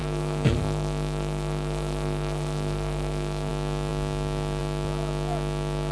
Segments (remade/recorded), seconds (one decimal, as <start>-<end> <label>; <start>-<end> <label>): 0.0-3.5 remade; 3.5-5.9 recorded